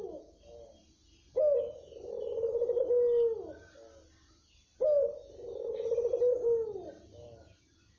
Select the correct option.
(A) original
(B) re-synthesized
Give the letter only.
A